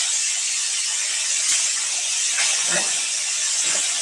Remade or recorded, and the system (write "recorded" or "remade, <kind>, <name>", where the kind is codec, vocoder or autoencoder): remade, vocoder, Vocos